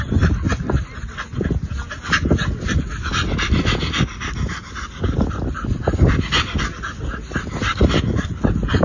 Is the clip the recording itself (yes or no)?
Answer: yes